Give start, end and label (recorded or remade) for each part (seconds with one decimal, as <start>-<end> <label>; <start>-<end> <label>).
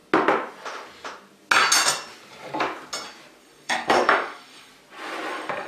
0.0-3.4 recorded; 3.4-4.7 remade; 4.7-5.3 recorded; 5.3-5.7 remade